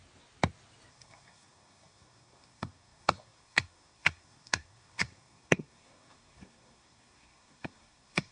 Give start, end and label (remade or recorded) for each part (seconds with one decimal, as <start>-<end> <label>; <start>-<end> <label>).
0.0-0.9 recorded; 0.9-8.3 remade